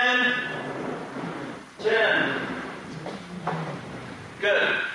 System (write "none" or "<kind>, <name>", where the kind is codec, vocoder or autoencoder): vocoder, BigVGAN v2